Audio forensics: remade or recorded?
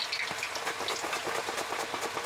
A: recorded